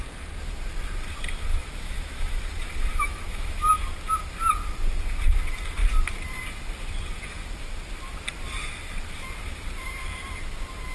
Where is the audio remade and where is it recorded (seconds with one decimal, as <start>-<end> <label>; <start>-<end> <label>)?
0.0-1.5 recorded; 1.5-2.4 remade; 2.4-2.9 recorded; 2.9-3.7 remade; 3.7-10.9 recorded